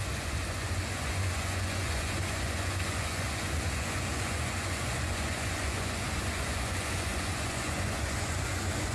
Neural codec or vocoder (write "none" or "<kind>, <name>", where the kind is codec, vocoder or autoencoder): vocoder, Vocos